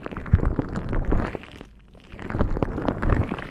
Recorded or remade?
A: remade